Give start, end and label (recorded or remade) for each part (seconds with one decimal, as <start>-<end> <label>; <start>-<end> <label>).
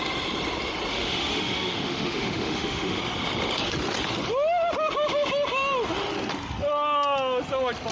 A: 0.0-0.9 recorded; 0.9-3.0 remade; 3.0-7.9 recorded